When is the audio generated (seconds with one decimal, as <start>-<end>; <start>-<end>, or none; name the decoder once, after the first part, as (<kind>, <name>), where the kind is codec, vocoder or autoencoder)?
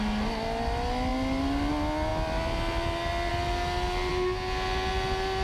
none